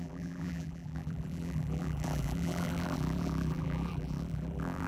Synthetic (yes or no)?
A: yes